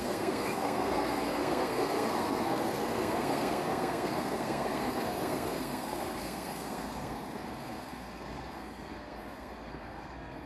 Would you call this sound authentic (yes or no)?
no